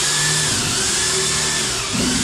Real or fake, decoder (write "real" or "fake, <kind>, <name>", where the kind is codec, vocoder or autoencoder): real